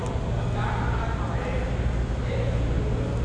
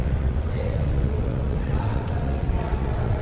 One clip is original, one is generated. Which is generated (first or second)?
second